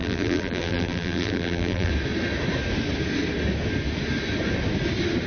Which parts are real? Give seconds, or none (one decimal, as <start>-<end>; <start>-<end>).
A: 1.9-5.3